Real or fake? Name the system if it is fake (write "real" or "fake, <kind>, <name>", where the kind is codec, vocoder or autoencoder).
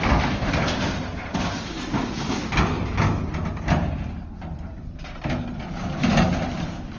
real